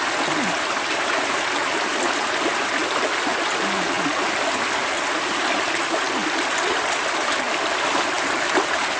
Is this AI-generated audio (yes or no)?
no